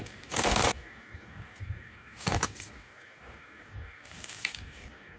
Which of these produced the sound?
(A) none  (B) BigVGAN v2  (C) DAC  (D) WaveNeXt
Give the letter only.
C